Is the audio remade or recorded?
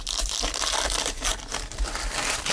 recorded